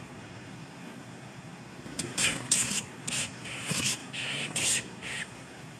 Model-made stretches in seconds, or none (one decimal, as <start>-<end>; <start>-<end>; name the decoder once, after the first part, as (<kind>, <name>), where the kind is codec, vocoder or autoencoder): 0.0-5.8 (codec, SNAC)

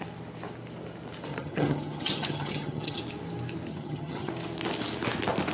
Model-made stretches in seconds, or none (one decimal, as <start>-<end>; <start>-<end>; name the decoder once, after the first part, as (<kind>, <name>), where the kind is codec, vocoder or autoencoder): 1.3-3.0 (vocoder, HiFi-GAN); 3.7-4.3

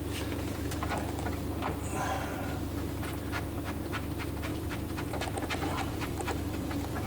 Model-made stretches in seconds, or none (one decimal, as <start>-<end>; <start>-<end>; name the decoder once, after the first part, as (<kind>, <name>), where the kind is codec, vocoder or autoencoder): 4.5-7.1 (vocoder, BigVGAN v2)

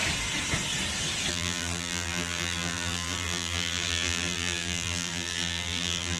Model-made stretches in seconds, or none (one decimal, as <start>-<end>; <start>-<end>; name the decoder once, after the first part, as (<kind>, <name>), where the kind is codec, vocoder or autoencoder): 1.3-6.2 (vocoder, BigVGAN v2)

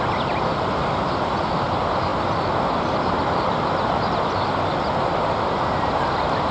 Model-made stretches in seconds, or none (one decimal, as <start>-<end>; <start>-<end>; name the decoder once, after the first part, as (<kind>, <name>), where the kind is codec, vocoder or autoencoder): none